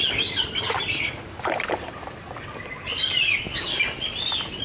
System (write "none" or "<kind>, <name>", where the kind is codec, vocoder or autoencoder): none